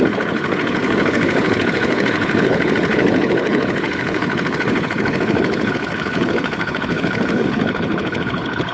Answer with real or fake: fake